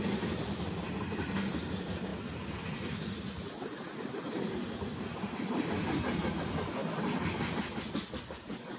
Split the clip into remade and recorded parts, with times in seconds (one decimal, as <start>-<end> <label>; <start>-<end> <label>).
0.0-8.8 recorded